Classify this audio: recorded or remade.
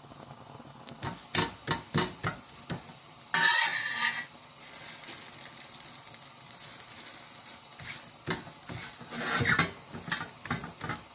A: recorded